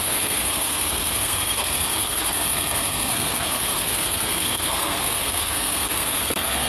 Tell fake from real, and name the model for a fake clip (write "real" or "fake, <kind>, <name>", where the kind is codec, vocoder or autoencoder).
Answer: fake, codec, SNAC